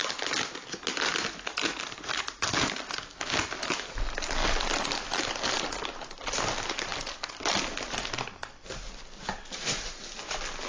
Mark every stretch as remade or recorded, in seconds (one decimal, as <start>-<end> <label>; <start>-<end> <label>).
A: 0.0-10.7 recorded